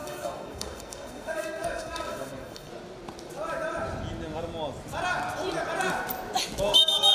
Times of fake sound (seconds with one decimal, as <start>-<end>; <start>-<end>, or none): 0.0-2.7